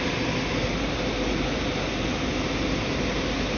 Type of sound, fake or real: real